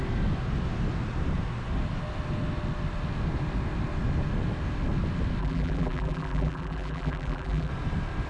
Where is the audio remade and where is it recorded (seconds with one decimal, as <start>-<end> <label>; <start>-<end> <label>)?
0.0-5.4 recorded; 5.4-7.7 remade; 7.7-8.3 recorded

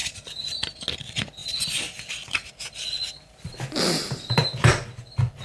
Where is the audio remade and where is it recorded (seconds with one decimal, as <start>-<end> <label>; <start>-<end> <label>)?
0.0-0.7 remade; 0.7-5.4 recorded

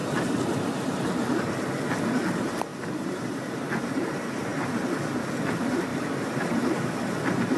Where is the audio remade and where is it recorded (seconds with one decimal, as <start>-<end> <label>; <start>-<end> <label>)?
0.0-1.5 remade; 1.5-2.7 recorded; 2.7-4.1 remade; 4.1-5.9 recorded; 5.9-6.9 remade; 6.9-7.6 recorded

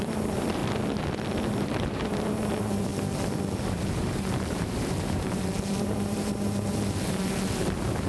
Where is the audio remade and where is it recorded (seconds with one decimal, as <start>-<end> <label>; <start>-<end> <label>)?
0.0-0.6 remade; 0.6-1.5 recorded; 1.5-2.9 remade; 2.9-3.6 recorded; 3.6-8.1 remade

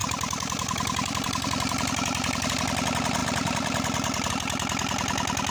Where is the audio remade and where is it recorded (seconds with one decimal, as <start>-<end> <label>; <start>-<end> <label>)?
0.0-2.5 remade; 2.5-3.2 recorded; 3.2-4.3 remade; 4.3-5.5 recorded